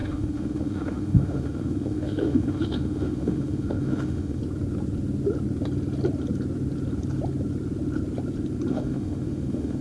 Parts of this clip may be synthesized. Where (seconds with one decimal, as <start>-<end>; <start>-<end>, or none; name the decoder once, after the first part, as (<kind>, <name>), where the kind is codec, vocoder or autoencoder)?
0.0-4.4 (autoencoder, DAC-VAE); 8.7-9.8